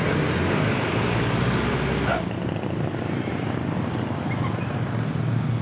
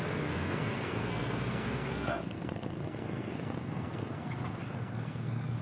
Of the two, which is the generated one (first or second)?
second